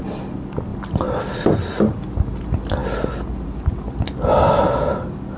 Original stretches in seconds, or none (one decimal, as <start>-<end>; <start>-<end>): 0.0-5.4